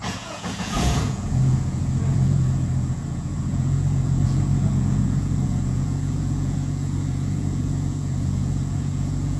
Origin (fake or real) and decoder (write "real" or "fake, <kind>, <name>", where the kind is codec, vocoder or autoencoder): fake, vocoder, Vocos